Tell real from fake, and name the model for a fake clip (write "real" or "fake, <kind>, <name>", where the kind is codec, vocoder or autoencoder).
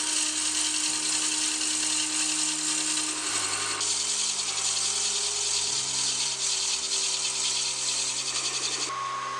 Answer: real